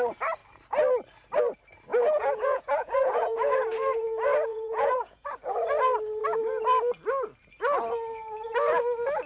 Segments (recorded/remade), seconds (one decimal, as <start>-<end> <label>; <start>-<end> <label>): 0.0-1.9 recorded; 1.9-3.6 remade; 3.6-4.5 recorded; 4.5-5.3 remade; 5.3-9.3 recorded